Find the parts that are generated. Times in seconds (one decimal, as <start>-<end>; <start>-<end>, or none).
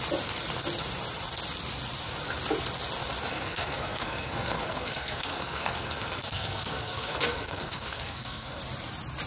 3.3-8.6